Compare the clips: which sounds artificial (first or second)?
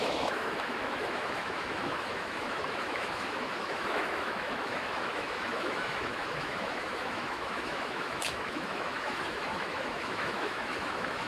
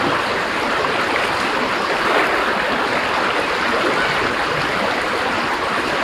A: first